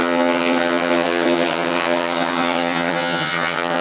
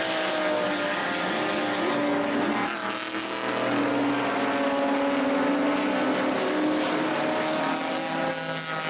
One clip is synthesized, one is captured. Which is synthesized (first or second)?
first